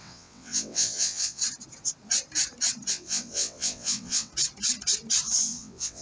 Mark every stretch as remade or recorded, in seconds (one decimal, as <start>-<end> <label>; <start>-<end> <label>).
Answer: 0.0-1.4 remade; 1.4-2.9 recorded; 2.9-4.3 remade; 4.3-5.4 recorded; 5.4-6.0 remade